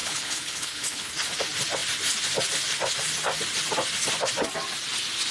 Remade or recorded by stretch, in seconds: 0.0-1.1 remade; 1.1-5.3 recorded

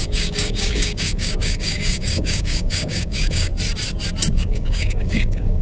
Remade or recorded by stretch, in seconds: 0.0-3.5 remade; 3.5-4.3 recorded; 4.3-5.6 remade

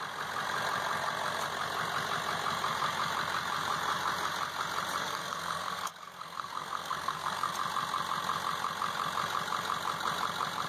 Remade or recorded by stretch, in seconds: 0.0-5.0 recorded; 5.0-7.5 remade; 7.5-10.7 recorded

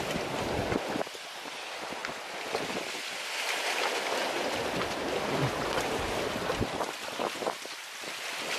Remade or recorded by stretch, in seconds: 0.0-8.6 recorded

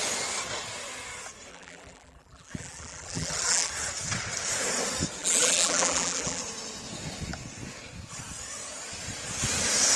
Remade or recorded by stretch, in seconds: 0.0-1.5 recorded; 1.5-3.7 remade; 3.7-5.2 recorded; 5.2-6.4 remade; 6.4-10.0 recorded

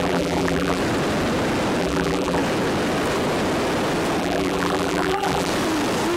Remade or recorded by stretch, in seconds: 0.0-0.8 remade; 0.8-1.8 recorded; 1.8-2.4 remade; 2.4-4.2 recorded; 4.2-5.5 remade; 5.5-6.2 recorded

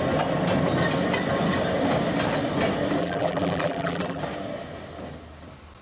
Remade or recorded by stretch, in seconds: 0.0-3.0 recorded; 3.0-4.2 remade; 4.2-5.8 recorded

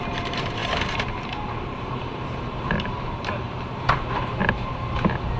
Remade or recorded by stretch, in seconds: 0.0-5.4 remade